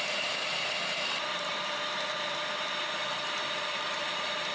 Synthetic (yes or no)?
yes